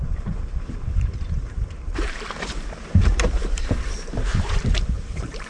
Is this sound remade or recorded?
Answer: remade